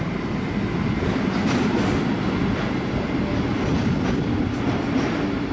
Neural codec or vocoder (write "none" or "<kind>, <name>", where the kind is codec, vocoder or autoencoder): none